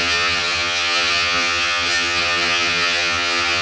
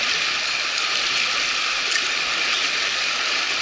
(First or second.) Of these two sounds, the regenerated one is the first